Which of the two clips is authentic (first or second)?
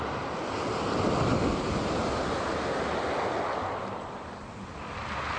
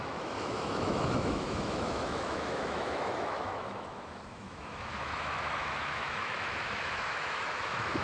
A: first